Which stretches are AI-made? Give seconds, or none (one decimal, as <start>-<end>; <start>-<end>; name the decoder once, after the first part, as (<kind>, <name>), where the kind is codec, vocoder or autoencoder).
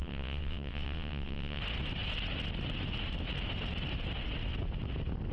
0.0-1.6 (vocoder, WaveNeXt)